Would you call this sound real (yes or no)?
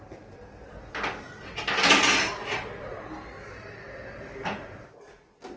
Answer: yes